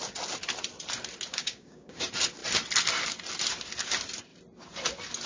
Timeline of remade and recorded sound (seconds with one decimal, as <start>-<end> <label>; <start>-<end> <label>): 0.0-1.3 recorded; 1.3-2.0 remade; 2.0-5.3 recorded